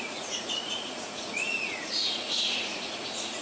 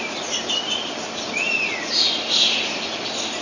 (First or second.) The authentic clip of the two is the second